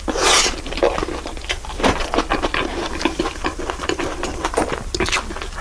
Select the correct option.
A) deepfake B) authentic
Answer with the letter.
B